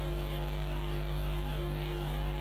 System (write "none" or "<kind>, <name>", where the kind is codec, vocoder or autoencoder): codec, DAC